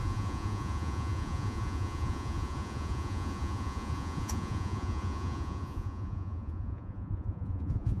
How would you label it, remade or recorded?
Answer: remade